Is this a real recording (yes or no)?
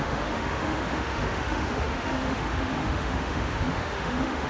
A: no